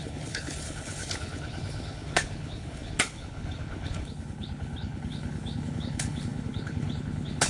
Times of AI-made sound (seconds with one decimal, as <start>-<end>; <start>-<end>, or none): 0.0-7.5